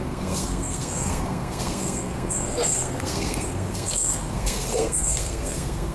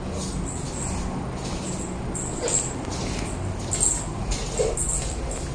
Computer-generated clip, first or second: first